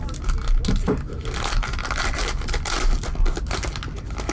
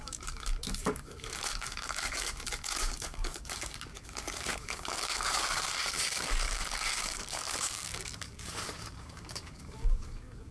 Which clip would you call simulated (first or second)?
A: second